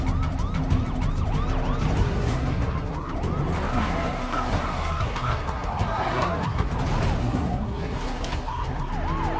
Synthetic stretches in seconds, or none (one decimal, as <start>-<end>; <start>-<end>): 2.0-3.1; 3.7-6.7; 7.2-8.9